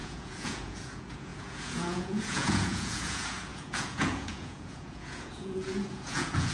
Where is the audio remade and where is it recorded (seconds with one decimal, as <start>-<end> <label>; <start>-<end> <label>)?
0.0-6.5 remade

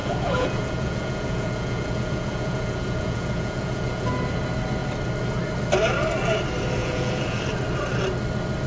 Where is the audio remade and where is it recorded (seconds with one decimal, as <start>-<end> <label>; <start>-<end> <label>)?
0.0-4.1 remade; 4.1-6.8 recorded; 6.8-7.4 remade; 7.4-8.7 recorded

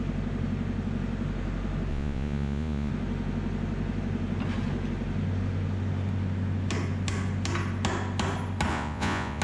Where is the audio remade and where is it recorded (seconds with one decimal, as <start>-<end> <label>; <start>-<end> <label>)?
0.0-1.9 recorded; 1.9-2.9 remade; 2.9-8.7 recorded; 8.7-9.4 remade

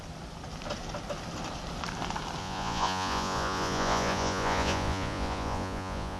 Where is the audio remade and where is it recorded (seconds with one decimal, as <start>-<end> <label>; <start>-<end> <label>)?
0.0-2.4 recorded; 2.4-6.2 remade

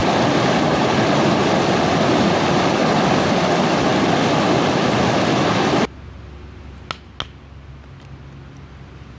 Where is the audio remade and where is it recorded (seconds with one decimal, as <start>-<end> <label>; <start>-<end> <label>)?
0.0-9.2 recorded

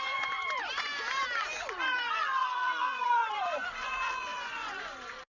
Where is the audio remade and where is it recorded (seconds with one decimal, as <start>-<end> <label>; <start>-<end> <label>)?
0.0-0.9 remade; 0.9-1.6 recorded; 1.6-5.3 remade

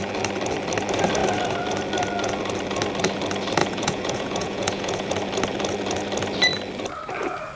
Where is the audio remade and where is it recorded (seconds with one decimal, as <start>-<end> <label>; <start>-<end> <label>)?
0.0-3.6 recorded; 3.6-5.1 remade; 5.1-7.6 recorded

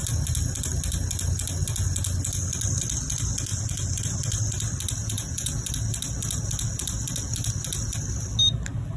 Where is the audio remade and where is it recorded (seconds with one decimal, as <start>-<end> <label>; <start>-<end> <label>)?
0.0-5.0 recorded; 5.0-5.7 remade; 5.7-9.0 recorded